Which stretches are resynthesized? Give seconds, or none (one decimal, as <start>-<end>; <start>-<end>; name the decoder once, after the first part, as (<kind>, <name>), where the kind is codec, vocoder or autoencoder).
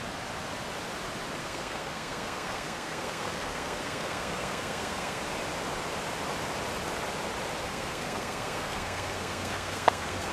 1.4-5.2 (codec, SNAC); 7.6-10.3